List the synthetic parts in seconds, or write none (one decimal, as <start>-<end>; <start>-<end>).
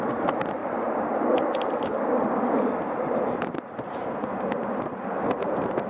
0.6-2.3; 4.9-5.9